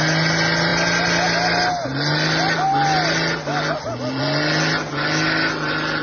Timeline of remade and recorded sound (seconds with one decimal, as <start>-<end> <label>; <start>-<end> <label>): 0.0-6.0 recorded

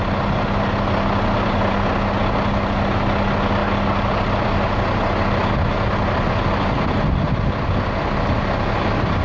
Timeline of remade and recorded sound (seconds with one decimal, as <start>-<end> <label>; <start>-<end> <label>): 0.0-9.2 recorded

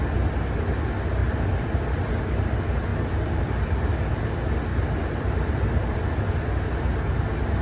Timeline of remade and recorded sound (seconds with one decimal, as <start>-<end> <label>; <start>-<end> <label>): 0.0-1.2 recorded; 1.2-2.1 remade; 2.1-2.9 recorded; 2.9-4.2 remade; 4.2-4.7 recorded; 4.7-6.4 remade; 6.4-7.6 recorded

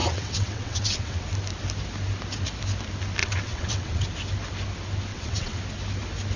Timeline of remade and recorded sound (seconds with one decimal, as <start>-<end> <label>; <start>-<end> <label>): 0.0-1.2 remade; 1.2-3.2 recorded; 3.2-4.0 remade; 4.0-5.1 recorded; 5.1-5.6 remade; 5.6-6.4 recorded

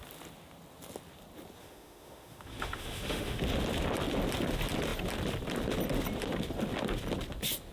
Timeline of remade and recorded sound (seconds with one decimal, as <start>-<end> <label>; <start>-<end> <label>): 0.0-1.6 recorded; 1.6-3.4 remade; 3.4-7.7 recorded

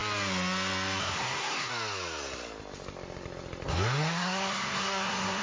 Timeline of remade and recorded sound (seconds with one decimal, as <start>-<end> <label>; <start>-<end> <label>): 0.0-1.0 recorded; 1.0-1.7 remade; 1.7-3.7 recorded; 3.7-5.4 remade

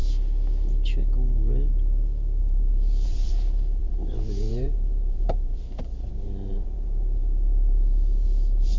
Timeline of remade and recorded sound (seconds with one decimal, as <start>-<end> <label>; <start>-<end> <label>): 0.0-2.4 recorded; 2.4-8.8 remade